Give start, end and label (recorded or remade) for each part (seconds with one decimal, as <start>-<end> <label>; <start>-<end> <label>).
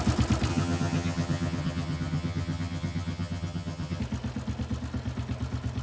0.0-0.5 recorded; 0.5-4.0 remade; 4.0-5.8 recorded